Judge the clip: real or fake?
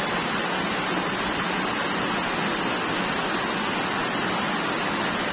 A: real